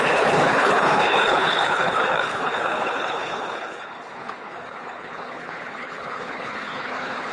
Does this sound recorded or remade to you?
remade